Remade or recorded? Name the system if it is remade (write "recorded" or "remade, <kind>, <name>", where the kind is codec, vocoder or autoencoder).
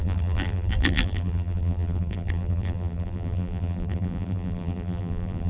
remade, vocoder, BigVGAN v2